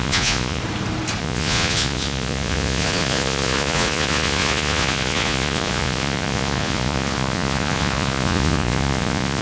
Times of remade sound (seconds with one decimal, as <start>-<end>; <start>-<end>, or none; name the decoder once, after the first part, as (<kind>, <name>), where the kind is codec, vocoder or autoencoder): 0.0-0.6 (vocoder, Vocos); 1.2-9.4